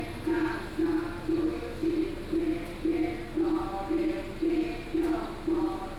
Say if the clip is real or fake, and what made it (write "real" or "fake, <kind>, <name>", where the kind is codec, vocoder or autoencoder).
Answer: real